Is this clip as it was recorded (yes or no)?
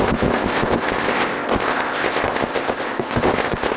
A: no